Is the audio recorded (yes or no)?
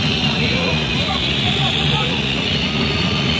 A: no